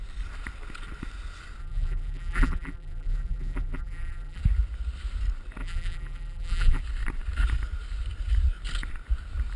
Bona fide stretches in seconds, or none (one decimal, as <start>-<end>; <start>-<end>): 0.0-1.6; 4.4-5.6; 6.8-9.6